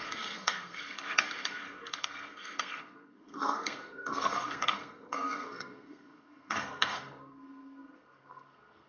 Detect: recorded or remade remade